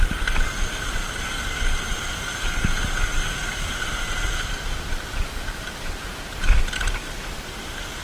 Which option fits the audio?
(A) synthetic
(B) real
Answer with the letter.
B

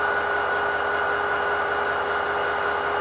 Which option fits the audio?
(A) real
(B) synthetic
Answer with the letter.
A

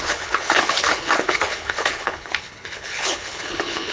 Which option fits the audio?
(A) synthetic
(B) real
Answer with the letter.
A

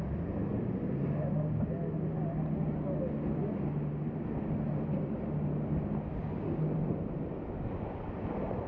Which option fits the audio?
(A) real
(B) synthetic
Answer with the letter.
A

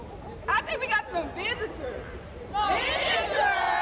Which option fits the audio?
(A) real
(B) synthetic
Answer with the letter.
A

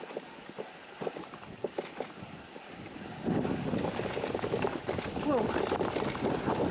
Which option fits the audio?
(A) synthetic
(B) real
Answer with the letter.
B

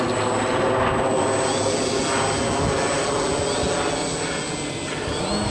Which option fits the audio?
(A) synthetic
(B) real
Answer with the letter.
B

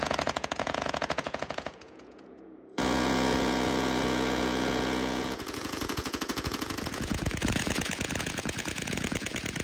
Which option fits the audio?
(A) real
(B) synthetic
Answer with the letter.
B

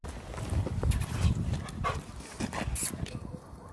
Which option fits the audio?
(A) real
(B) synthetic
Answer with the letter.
A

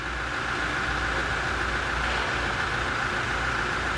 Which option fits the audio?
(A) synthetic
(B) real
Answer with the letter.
B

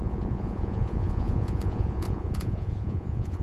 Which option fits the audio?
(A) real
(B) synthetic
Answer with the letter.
B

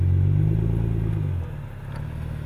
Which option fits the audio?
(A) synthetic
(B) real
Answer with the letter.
B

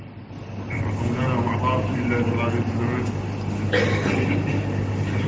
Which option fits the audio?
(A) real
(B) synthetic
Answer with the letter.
A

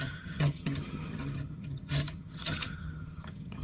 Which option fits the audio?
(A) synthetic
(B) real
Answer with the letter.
A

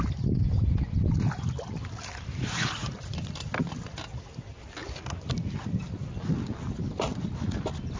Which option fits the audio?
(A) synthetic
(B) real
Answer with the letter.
B